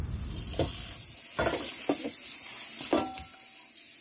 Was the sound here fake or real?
real